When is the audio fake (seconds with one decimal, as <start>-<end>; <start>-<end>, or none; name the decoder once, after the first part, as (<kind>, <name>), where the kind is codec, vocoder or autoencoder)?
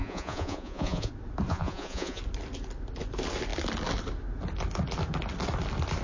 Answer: 0.0-1.1 (vocoder, Vocos); 1.5-2.2